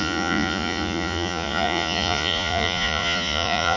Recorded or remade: remade